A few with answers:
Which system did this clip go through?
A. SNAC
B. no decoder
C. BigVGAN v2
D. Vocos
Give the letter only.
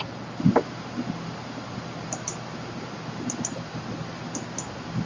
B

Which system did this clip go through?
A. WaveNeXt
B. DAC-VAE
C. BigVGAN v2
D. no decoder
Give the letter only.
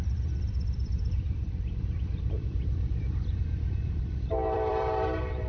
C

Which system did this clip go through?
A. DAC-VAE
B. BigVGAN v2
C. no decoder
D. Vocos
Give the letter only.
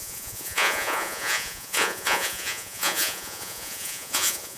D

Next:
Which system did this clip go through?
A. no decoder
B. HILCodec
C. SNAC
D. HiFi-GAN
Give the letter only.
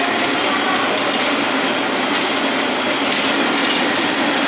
A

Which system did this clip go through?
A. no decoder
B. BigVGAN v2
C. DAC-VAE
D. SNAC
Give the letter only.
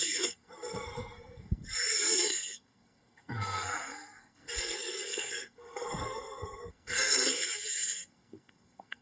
D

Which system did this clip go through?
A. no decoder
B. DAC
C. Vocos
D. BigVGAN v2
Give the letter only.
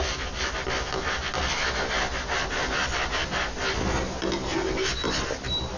A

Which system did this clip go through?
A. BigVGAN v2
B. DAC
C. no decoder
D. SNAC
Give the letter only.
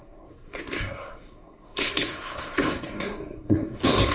D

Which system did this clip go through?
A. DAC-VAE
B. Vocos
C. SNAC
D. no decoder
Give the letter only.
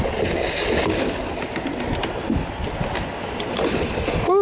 D